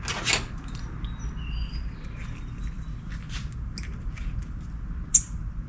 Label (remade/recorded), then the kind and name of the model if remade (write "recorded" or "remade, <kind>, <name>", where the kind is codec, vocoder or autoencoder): recorded